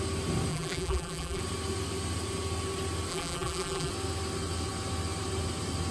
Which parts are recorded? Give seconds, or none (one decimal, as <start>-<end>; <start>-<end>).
0.0-0.5; 1.4-3.1; 3.9-5.9